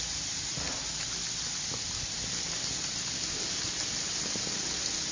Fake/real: real